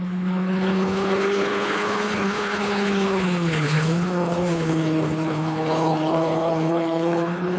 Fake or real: fake